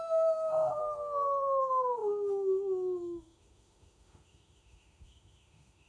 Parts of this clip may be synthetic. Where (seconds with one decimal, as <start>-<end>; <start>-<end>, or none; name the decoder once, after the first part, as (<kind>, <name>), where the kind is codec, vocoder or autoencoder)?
0.0-0.8 (autoencoder, DAC-VAE); 1.6-5.9